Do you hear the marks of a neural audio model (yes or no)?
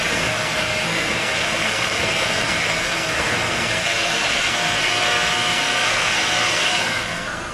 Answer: yes